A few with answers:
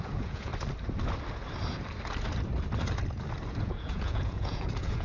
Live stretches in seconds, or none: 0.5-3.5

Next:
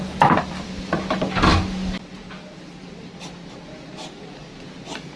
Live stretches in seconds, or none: 0.0-5.2

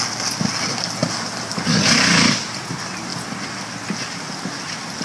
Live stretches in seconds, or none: 0.0-5.0

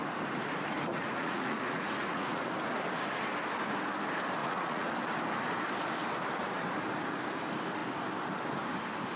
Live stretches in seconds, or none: 0.0-0.9; 2.4-4.4; 4.9-9.2

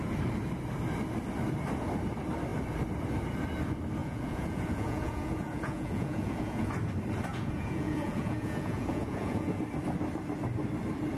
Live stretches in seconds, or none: 0.0-4.0; 6.7-7.3; 9.6-11.2